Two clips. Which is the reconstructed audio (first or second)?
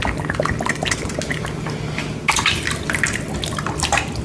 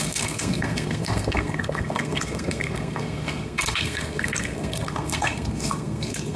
second